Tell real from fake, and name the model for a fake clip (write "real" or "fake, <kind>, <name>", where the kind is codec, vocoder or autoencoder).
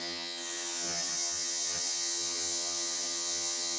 fake, vocoder, HiFi-GAN